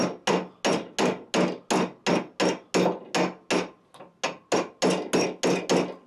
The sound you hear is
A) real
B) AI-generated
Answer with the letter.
A